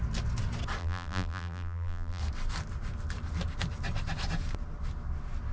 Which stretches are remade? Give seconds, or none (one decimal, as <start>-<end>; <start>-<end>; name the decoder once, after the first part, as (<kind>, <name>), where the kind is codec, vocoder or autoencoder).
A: 0.8-2.2 (vocoder, BigVGAN v2)